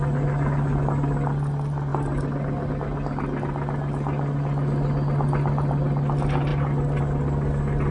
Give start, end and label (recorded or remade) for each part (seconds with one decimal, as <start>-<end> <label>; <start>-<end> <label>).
0.0-7.9 recorded